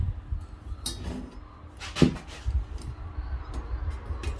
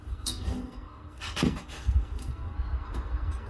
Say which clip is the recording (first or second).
first